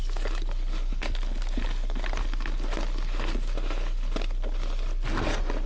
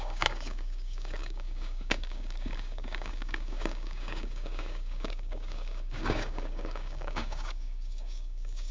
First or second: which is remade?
second